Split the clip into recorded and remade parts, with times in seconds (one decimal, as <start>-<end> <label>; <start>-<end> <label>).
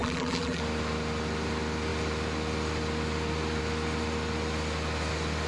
0.0-0.6 remade; 0.6-5.5 recorded